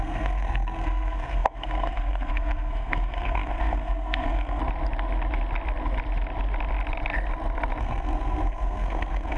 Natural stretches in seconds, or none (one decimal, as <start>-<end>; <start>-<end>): 4.6-7.8